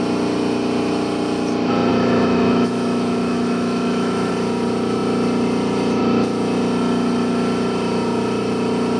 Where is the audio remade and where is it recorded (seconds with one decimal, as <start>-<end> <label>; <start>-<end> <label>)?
0.0-1.9 recorded; 1.9-4.3 remade; 4.3-9.0 recorded